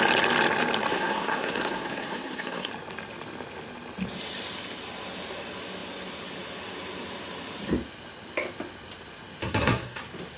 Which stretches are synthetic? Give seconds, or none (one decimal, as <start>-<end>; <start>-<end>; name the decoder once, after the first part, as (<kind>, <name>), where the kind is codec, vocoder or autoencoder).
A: 0.9-2.7 (codec, SNAC); 9.4-10.0